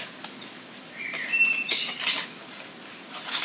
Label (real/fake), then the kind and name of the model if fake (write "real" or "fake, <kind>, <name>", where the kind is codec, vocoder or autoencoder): real